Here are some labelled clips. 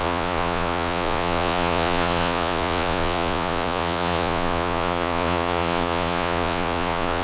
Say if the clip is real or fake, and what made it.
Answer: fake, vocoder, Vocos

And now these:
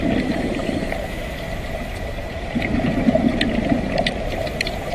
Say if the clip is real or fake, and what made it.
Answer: real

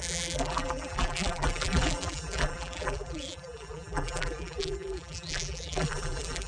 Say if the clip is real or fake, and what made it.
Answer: fake, vocoder, BigVGAN v2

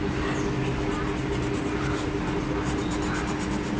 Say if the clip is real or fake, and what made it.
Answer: real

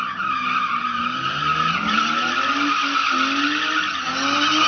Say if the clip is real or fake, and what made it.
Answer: real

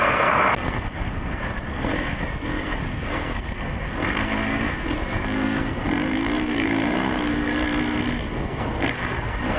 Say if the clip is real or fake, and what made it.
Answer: fake, codec, SNAC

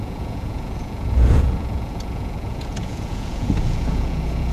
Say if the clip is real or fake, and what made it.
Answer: fake, vocoder, Vocos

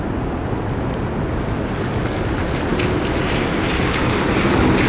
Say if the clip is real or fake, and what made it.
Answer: real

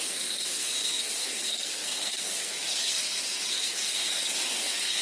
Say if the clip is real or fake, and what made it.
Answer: fake, codec, SNAC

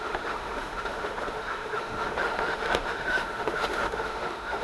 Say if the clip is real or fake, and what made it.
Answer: fake, autoencoder, DAC-VAE